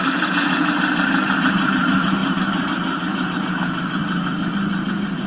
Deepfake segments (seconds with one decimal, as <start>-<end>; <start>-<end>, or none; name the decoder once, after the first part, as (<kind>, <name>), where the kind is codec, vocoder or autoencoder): 0.0-4.0 (vocoder, BigVGAN v2); 4.5-5.3